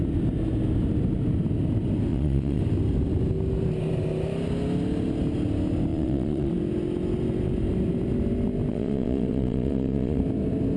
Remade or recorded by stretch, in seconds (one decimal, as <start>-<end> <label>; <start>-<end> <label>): 0.0-2.1 recorded; 2.1-2.6 remade; 2.6-5.9 recorded; 5.9-6.5 remade; 6.5-8.7 recorded; 8.7-10.2 remade; 10.2-10.8 recorded